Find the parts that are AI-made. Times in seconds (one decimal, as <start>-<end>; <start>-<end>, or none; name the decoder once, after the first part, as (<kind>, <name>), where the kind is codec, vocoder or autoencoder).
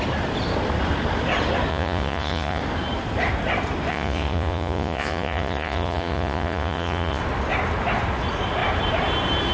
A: 1.7-2.6 (vocoder, Vocos); 3.9-7.2